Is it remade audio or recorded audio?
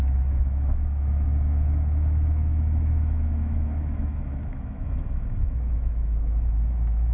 remade